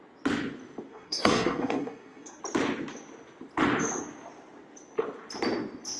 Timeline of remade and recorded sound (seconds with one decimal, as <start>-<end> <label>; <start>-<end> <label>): 0.0-0.9 recorded; 0.9-2.4 remade; 2.4-6.0 recorded